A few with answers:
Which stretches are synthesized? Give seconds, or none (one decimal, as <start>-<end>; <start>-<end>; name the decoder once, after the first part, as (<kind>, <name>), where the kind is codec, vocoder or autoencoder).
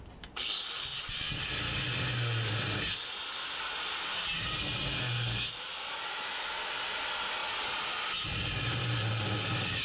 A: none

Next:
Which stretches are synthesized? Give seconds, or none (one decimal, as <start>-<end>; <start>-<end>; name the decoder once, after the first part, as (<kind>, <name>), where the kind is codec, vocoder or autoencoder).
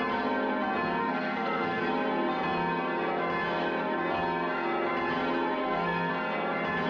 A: 1.0-1.8 (codec, SNAC); 5.6-6.1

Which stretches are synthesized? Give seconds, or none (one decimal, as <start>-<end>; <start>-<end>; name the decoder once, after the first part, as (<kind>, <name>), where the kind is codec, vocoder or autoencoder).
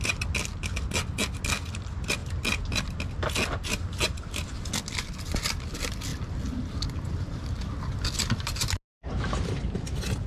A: none